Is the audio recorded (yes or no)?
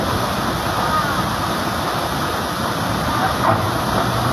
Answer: yes